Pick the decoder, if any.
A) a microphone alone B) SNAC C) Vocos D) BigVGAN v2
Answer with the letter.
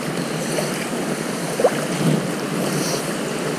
A